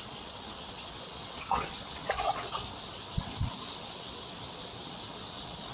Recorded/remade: remade